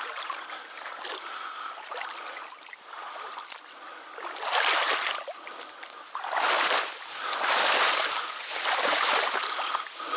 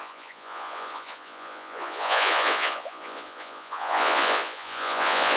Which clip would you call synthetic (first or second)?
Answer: second